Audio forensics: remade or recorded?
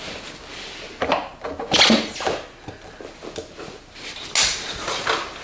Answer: recorded